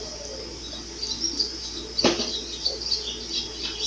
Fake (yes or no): no